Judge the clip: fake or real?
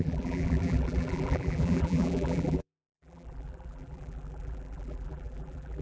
fake